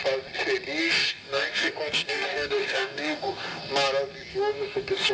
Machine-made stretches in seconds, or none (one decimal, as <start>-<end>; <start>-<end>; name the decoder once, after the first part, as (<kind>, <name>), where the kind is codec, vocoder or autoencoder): 0.8-3.6 (codec, DAC); 4.3-5.1